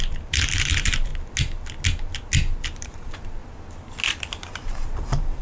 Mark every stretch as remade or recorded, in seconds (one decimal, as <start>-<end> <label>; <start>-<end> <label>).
0.0-1.1 remade; 1.1-2.8 recorded; 2.8-3.4 remade; 3.4-4.1 recorded; 4.1-5.4 remade